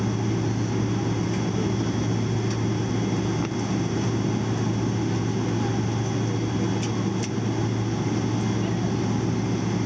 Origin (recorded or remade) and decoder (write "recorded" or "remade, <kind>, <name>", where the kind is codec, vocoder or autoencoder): recorded